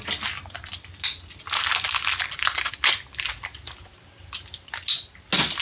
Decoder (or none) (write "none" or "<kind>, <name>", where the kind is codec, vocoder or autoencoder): none